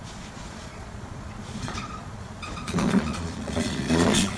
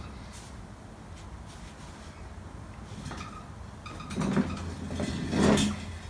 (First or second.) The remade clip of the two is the first